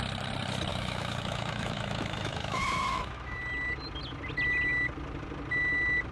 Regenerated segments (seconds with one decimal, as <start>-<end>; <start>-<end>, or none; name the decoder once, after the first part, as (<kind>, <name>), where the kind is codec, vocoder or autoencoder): 0.7-3.4 (autoencoder, DAC-VAE)